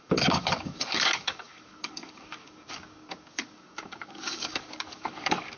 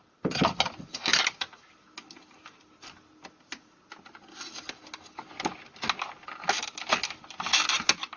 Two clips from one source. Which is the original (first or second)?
second